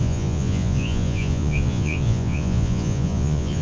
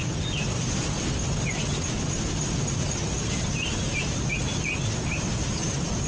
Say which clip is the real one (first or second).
second